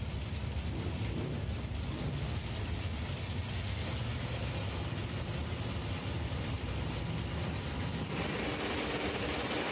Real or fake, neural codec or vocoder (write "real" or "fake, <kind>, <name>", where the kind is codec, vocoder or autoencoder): real